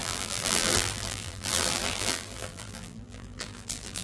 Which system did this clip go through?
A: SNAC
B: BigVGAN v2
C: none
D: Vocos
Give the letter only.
B